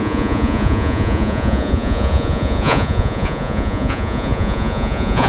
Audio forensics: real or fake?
fake